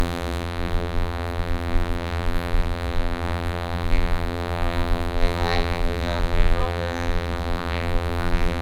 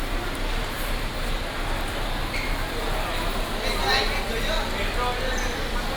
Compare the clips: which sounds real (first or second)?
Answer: second